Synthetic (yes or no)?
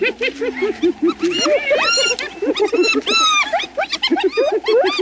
no